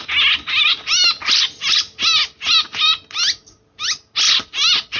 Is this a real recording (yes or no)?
yes